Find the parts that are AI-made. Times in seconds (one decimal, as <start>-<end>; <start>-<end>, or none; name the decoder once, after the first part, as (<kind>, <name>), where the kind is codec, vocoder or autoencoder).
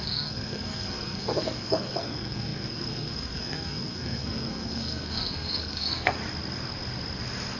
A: 0.0-6.2 (codec, SNAC)